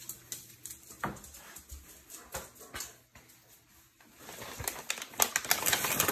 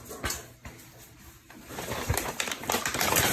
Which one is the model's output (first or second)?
second